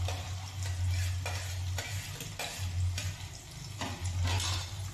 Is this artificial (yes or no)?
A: no